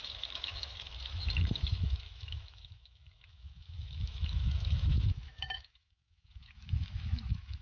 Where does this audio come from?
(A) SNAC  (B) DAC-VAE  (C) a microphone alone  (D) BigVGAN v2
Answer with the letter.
B